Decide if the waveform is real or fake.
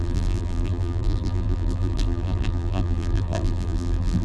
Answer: fake